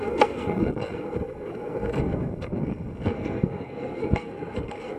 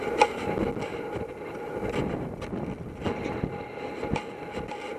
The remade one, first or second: first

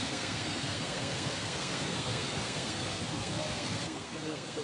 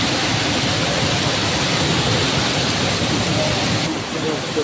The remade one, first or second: first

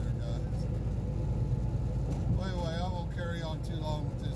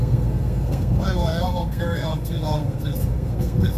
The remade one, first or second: second